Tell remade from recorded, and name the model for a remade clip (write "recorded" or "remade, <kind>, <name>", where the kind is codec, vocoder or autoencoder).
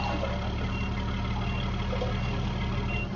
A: recorded